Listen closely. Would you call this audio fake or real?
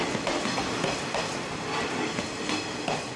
real